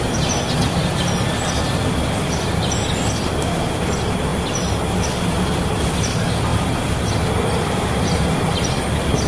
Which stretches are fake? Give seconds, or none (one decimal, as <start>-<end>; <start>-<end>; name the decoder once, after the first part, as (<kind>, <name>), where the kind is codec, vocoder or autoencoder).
none